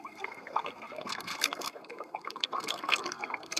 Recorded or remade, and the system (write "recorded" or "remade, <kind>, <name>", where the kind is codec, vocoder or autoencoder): remade, codec, SNAC